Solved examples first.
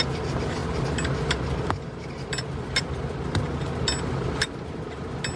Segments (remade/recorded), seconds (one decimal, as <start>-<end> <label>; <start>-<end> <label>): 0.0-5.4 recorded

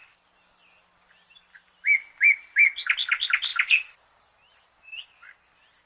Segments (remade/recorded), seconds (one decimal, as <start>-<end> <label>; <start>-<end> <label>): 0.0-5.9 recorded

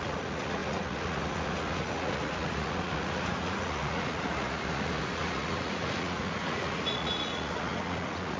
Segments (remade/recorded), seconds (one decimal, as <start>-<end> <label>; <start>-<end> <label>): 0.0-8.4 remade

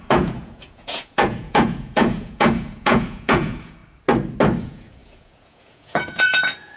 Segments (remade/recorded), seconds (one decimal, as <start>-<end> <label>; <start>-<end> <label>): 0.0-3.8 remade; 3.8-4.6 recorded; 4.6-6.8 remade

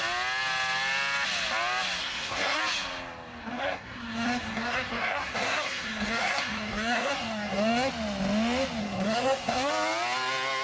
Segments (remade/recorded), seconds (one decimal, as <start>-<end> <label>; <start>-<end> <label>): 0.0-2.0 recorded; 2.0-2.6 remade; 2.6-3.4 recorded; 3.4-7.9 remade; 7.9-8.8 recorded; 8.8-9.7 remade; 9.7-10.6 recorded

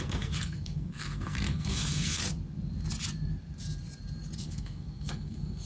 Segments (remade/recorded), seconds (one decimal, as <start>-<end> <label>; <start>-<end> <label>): 0.0-2.2 remade; 2.2-4.4 recorded; 4.4-5.7 remade

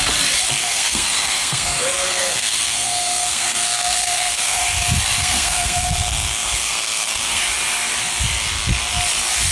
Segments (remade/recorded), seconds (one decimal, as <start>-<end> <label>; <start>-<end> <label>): 0.0-0.6 recorded; 0.6-4.6 remade; 4.6-5.2 recorded; 5.2-7.4 remade; 7.4-9.5 recorded

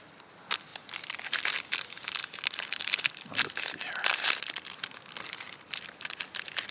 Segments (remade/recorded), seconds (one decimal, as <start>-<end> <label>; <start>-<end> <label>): 0.0-4.1 recorded; 4.1-4.6 remade; 4.6-6.7 recorded